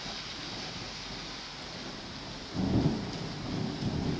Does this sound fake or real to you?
real